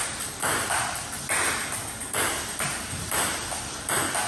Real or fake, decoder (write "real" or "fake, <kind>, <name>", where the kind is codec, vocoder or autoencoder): real